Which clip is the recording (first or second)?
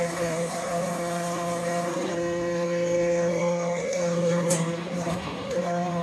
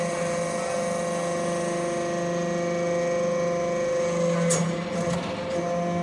second